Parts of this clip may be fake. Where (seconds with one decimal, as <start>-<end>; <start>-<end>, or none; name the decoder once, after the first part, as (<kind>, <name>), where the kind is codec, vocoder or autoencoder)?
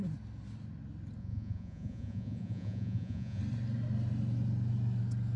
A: 1.2-3.4 (vocoder, Vocos)